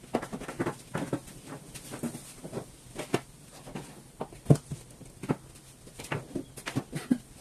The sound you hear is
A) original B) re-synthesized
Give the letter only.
A